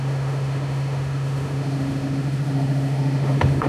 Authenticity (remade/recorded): remade